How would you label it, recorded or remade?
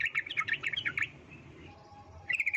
remade